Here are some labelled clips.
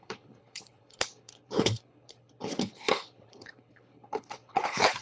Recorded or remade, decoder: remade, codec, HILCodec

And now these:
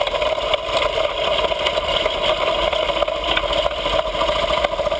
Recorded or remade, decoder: recorded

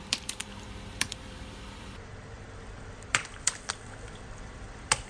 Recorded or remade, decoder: remade, vocoder, BigVGAN v2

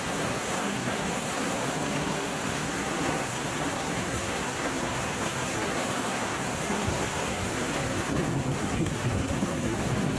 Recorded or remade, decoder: remade, codec, SNAC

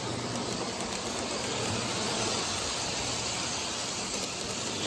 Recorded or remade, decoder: remade, vocoder, BigVGAN v2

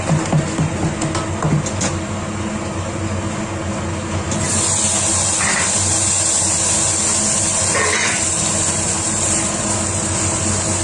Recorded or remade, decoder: recorded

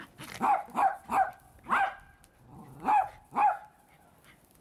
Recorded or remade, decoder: recorded